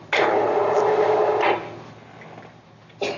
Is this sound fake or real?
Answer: real